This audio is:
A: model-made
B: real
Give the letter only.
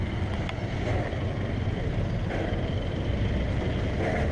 B